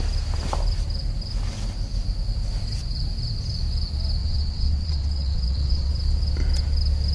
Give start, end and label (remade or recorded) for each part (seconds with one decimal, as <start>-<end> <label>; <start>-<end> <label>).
0.0-4.2 recorded; 4.2-5.9 remade; 5.9-7.1 recorded